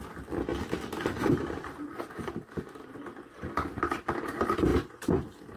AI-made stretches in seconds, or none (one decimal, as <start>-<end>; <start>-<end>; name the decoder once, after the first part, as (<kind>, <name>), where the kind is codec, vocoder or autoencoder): none